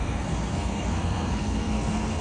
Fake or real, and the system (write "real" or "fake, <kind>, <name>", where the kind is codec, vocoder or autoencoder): fake, codec, SNAC